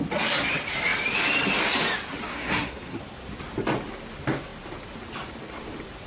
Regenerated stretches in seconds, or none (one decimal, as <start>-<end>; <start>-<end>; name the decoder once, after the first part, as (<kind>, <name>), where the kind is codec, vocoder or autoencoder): 2.3-3.0 (codec, SNAC)